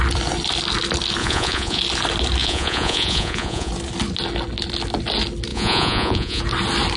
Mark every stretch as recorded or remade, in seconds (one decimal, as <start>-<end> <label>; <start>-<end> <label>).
0.0-1.2 recorded; 1.2-1.8 remade; 1.8-2.4 recorded; 2.4-3.7 remade; 3.7-5.5 recorded; 5.5-6.4 remade; 6.4-7.0 recorded